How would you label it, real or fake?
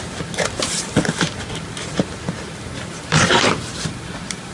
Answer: real